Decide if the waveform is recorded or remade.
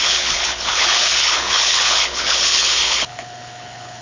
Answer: remade